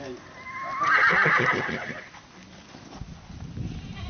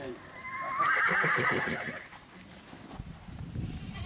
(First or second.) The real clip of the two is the first